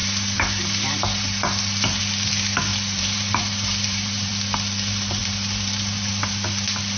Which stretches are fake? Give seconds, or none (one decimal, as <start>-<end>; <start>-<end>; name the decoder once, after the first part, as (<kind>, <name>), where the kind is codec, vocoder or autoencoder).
0.0-2.0 (vocoder, BigVGAN v2); 2.7-4.3; 5.2-6.1